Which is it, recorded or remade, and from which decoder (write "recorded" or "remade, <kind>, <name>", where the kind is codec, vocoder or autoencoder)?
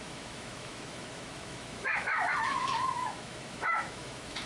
remade, autoencoder, DAC-VAE